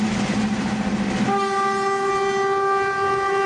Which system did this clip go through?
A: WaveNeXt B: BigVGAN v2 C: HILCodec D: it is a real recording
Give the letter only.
D